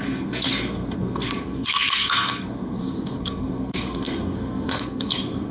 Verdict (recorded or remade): remade